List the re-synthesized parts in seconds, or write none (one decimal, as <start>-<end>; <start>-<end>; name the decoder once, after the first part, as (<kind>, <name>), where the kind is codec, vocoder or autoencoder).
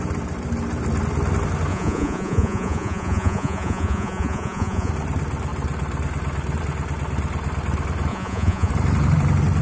1.7-4.9 (vocoder, Vocos); 8.1-8.7